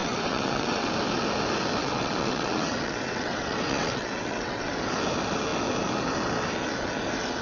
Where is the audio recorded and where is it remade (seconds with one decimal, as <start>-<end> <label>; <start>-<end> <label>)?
0.0-0.9 remade; 0.9-1.8 recorded; 1.8-4.7 remade; 4.7-7.4 recorded